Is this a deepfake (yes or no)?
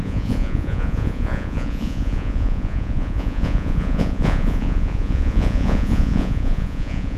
yes